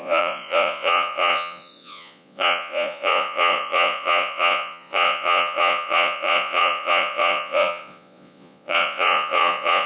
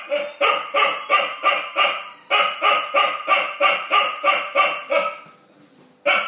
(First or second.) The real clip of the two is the second